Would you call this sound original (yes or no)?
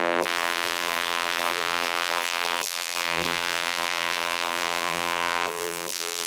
no